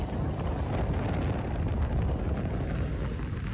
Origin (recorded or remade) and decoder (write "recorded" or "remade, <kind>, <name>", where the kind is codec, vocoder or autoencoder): recorded